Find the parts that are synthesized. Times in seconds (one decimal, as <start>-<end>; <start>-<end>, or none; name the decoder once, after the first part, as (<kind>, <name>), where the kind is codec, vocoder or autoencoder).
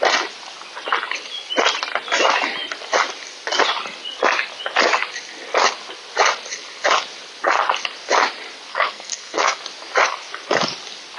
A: 8.7-9.6 (codec, SNAC)